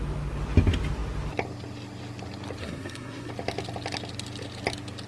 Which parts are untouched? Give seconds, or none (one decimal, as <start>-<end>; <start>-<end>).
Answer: 0.0-2.6; 3.3-5.1

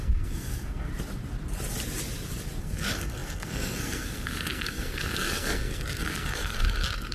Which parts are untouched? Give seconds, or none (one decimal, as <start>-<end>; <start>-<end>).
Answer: 0.9-2.6

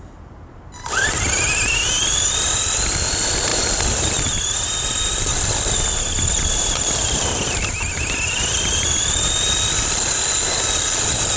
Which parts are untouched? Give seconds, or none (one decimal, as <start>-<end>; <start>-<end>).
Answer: 0.0-11.4

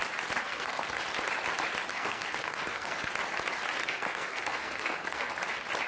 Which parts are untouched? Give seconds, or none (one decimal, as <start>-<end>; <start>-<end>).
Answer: 0.0-0.4; 1.0-1.9; 3.1-3.8; 5.3-5.9

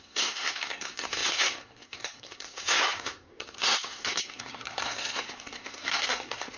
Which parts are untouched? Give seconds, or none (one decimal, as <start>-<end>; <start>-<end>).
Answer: none

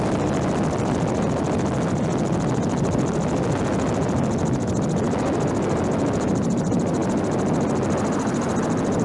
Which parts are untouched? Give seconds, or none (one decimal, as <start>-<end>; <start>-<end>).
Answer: 0.0-9.0